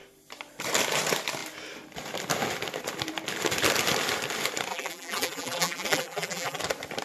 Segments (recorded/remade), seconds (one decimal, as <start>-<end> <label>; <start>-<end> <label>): 0.0-4.7 recorded; 4.7-6.6 remade; 6.6-7.0 recorded